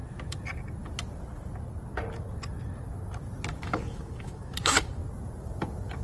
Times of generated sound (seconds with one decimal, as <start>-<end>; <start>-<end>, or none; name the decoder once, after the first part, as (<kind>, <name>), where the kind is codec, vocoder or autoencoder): 3.6-5.0 (codec, DAC)